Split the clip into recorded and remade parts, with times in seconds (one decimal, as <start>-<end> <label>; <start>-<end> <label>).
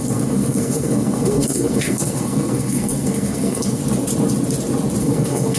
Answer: 0.0-3.8 remade; 3.8-5.0 recorded; 5.0-5.6 remade